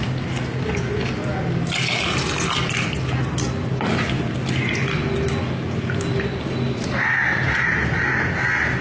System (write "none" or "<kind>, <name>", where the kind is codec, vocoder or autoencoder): none